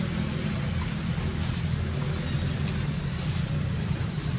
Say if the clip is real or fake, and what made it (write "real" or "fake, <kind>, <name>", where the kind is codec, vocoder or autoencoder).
real